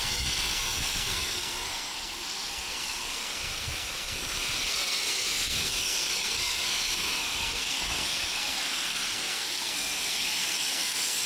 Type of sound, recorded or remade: remade